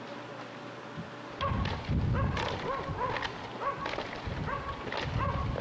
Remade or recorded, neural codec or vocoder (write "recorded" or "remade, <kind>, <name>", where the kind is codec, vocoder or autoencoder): recorded